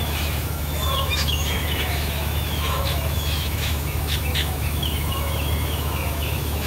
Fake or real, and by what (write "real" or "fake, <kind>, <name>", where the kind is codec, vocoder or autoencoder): fake, autoencoder, DAC-VAE